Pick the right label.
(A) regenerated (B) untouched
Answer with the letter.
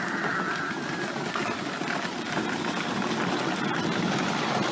B